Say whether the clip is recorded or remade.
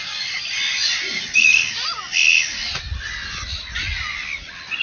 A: recorded